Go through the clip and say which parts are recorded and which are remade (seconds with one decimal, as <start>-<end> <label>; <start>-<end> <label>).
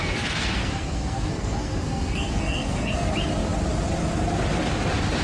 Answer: 0.0-3.1 remade; 3.1-5.2 recorded